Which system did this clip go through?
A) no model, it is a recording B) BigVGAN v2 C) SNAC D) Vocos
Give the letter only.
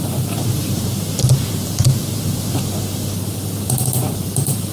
B